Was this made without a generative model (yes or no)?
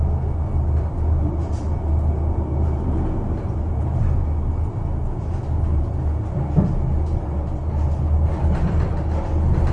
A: yes